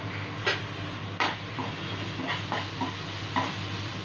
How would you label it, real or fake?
real